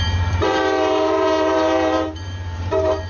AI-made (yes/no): yes